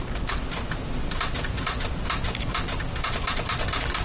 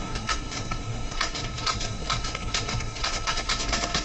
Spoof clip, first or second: second